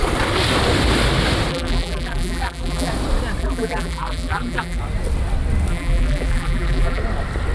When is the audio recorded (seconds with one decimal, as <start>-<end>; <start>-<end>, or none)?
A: 0.0-1.5; 2.9-3.4; 4.8-5.7; 7.0-7.5